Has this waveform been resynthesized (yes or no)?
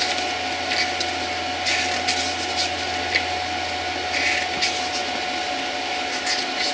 no